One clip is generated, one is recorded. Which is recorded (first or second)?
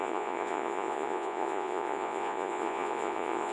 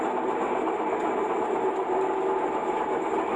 second